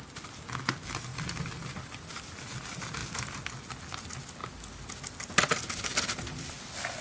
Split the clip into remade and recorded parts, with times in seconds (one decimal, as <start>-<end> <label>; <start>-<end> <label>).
0.0-7.0 recorded